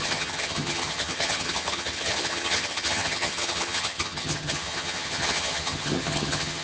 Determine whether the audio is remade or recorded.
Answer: remade